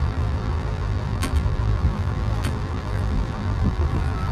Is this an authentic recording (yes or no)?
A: no